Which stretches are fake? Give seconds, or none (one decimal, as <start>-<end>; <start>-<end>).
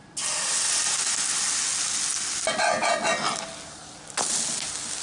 none